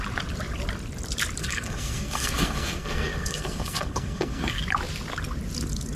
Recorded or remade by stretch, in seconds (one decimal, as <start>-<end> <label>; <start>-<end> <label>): 0.0-1.4 recorded; 1.4-4.6 remade; 4.6-6.0 recorded